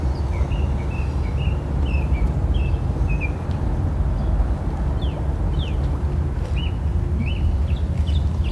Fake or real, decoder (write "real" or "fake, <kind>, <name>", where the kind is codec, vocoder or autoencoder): real